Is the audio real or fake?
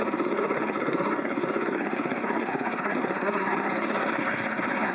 fake